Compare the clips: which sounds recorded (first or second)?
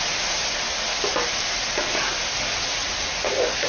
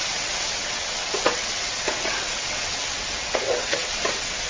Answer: first